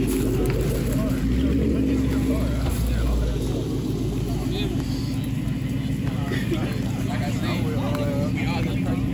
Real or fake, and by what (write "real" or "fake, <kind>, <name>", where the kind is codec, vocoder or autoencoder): real